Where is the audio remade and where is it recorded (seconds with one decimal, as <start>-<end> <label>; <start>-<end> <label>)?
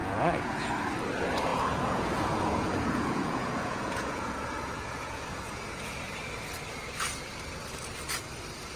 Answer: 0.0-0.7 remade; 0.7-1.5 recorded; 1.5-5.8 remade; 5.8-8.8 recorded